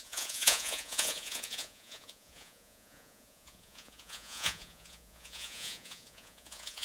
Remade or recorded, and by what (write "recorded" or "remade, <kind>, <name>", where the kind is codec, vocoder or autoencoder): remade, vocoder, Vocos